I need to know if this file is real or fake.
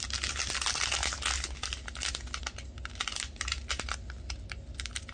real